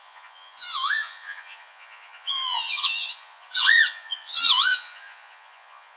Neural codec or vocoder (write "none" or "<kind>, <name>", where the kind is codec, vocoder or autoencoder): vocoder, Vocos